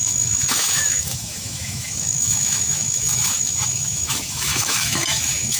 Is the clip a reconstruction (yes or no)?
yes